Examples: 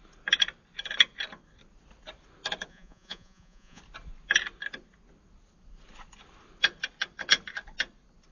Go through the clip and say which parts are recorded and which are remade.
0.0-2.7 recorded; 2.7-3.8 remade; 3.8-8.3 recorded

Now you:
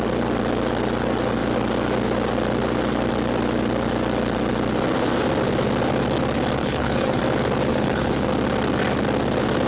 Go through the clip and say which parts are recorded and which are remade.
0.0-6.6 recorded; 6.6-7.2 remade; 7.2-7.7 recorded; 7.7-8.3 remade; 8.3-9.7 recorded